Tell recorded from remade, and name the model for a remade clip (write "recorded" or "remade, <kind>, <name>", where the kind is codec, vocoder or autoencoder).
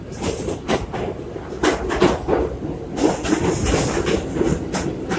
recorded